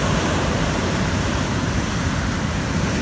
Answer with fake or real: fake